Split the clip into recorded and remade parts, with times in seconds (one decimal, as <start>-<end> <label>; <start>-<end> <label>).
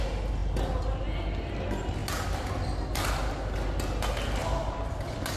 0.0-5.4 recorded